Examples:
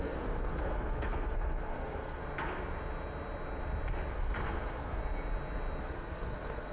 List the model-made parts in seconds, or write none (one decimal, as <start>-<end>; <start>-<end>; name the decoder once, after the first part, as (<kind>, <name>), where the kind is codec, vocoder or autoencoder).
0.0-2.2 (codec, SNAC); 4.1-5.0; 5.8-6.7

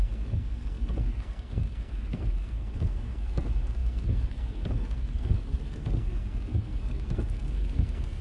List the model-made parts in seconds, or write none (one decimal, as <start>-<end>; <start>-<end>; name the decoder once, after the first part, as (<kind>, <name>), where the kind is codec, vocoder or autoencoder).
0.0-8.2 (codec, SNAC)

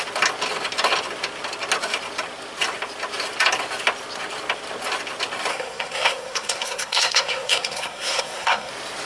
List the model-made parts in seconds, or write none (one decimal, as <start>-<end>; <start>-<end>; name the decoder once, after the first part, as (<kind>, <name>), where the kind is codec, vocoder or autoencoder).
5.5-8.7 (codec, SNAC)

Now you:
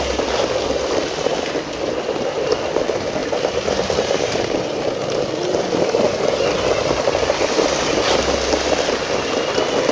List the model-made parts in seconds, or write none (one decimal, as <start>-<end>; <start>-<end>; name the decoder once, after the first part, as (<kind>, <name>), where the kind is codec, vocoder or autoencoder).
none

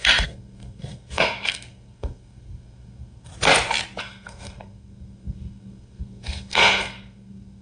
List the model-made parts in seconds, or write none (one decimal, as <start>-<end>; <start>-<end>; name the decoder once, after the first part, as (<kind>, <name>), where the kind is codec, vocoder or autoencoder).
0.0-3.3 (codec, SNAC); 4.0-7.6

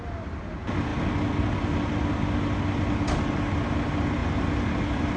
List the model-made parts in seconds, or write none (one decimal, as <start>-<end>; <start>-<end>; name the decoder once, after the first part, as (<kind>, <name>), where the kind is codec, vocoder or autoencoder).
none

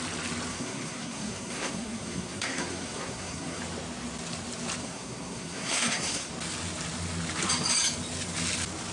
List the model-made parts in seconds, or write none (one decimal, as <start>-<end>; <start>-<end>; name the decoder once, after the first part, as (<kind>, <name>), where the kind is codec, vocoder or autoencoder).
0.5-3.6 (codec, SNAC); 4.8-6.3